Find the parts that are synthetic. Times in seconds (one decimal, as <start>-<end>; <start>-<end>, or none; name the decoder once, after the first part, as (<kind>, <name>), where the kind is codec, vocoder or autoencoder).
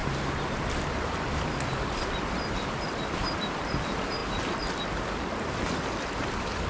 0.0-3.8 (vocoder, BigVGAN v2)